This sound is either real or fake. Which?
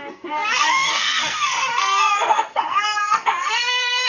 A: fake